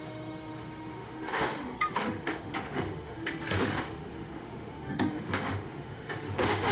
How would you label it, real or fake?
fake